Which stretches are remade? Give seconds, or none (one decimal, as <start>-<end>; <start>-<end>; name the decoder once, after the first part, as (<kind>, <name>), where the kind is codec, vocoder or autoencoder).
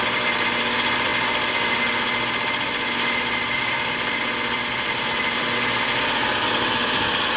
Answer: 0.0-1.1 (vocoder, BigVGAN v2); 4.9-7.4